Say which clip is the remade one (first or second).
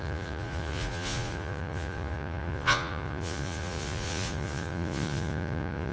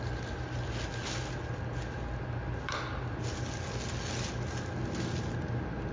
first